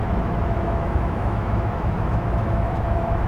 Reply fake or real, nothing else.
fake